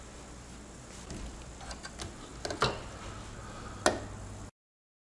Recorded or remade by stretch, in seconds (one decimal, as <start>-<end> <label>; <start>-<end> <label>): 0.0-5.1 recorded